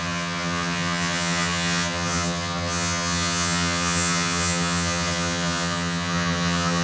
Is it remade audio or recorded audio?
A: remade